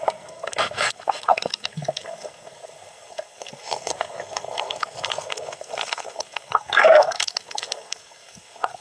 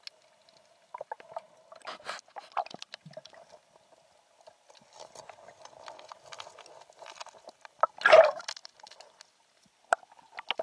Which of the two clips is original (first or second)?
second